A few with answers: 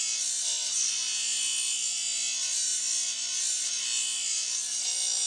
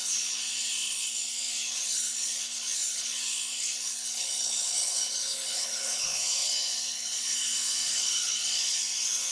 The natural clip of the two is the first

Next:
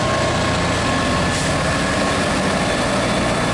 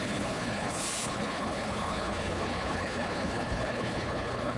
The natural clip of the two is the first